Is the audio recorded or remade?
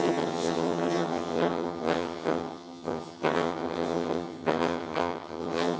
remade